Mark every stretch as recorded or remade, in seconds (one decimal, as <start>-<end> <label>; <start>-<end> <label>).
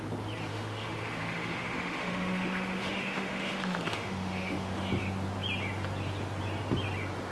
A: 0.0-0.5 recorded; 0.5-4.9 remade; 4.9-7.3 recorded